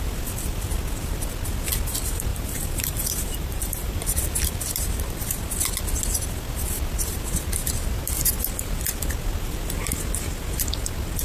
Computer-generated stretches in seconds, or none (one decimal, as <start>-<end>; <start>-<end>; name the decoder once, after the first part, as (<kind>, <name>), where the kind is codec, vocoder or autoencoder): 2.3-4.2 (vocoder, BigVGAN v2)